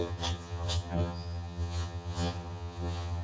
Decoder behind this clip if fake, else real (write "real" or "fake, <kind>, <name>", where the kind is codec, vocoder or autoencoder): fake, vocoder, HiFi-GAN